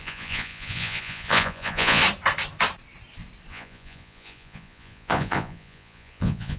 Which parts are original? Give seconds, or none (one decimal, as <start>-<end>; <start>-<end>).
2.0-3.5